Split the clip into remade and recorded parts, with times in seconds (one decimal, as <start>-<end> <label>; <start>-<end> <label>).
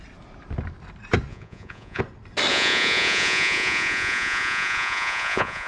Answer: 0.0-1.3 recorded; 1.3-2.0 remade; 2.0-2.5 recorded; 2.5-5.7 remade